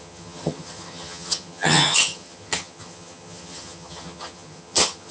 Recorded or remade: remade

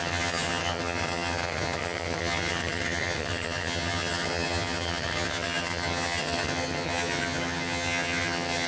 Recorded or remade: remade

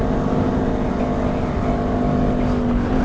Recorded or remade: recorded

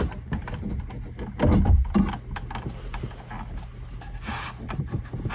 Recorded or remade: recorded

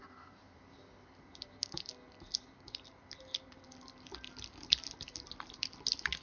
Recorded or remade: recorded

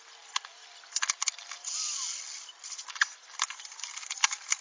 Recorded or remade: recorded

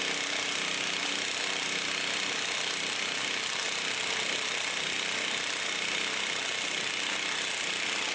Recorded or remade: recorded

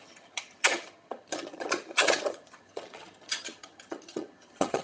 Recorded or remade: remade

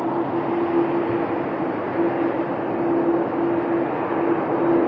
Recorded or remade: recorded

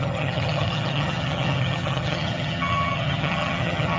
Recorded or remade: remade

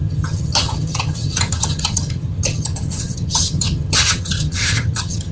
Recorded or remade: remade